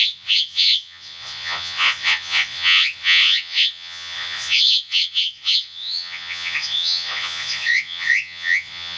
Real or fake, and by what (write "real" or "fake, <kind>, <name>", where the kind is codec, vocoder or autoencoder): fake, vocoder, Vocos